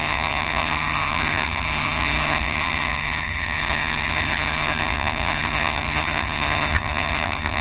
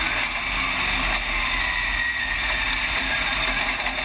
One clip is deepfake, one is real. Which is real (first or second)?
second